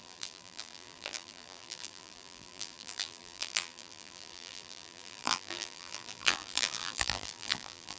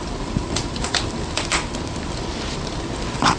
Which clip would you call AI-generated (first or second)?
first